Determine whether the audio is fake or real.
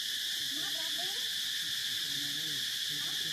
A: real